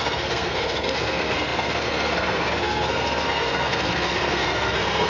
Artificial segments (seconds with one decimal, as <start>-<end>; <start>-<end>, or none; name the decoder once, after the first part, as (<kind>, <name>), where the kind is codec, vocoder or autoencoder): 0.0-5.1 (codec, SNAC)